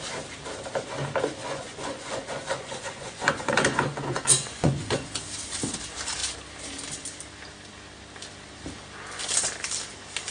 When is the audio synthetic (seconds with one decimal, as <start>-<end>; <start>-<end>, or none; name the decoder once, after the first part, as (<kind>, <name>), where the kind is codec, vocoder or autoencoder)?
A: 1.4-5.2 (vocoder, Vocos)